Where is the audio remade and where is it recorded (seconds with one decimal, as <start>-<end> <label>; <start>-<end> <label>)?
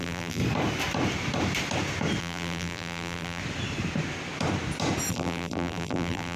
0.0-0.4 remade; 0.4-2.2 recorded; 2.2-3.4 remade; 3.4-5.1 recorded; 5.1-6.4 remade